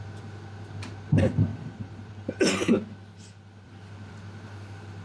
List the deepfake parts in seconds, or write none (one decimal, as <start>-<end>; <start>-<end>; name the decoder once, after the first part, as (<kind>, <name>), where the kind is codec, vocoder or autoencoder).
1.5-4.1 (vocoder, BigVGAN v2)